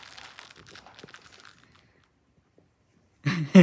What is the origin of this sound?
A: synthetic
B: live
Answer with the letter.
B